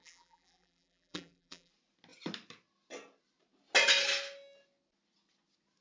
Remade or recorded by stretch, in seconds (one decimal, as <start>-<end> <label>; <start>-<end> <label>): 0.0-1.7 remade; 1.7-5.8 recorded